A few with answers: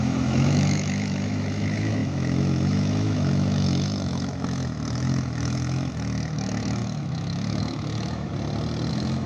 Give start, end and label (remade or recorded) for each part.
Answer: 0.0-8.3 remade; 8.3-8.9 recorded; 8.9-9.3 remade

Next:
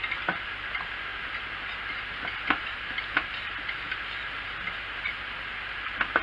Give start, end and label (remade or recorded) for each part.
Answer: 0.0-6.2 recorded

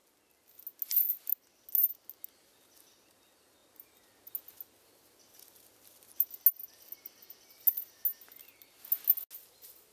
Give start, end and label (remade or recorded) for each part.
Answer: 0.0-9.9 recorded

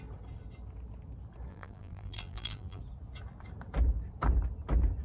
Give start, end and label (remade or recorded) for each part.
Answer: 0.0-1.5 recorded; 1.5-2.8 remade; 2.8-5.0 recorded

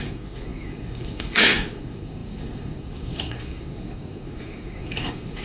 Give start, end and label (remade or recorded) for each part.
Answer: 0.0-5.4 remade